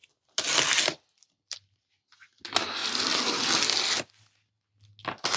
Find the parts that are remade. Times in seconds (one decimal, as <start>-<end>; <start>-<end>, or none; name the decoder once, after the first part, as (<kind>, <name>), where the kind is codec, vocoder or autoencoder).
none